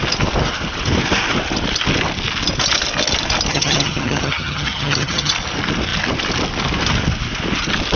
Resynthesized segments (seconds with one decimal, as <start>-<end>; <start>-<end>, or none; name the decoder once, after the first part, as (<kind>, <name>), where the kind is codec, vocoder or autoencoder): 3.5-5.3 (vocoder, HiFi-GAN)